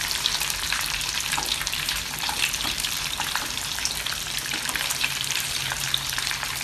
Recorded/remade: remade